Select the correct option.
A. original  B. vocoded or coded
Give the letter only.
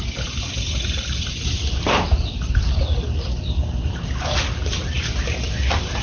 A